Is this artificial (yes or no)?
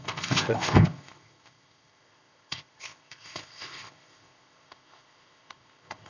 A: yes